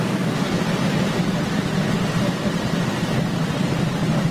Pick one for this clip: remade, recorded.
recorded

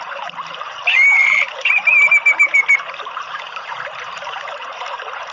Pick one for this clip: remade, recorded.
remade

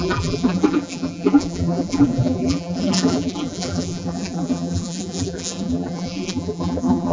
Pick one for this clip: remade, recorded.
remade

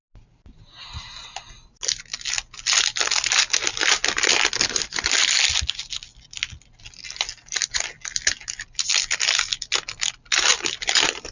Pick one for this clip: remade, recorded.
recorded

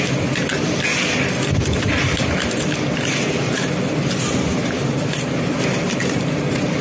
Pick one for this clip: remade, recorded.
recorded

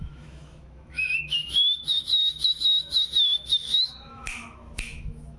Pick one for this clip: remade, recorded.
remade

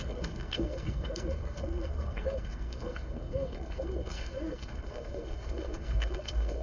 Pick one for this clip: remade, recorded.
remade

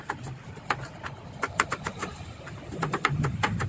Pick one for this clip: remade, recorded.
remade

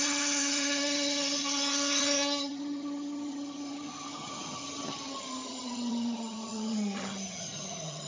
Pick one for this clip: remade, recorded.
remade